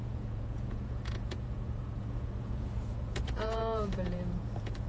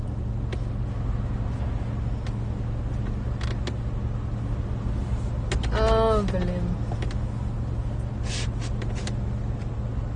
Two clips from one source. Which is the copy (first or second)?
first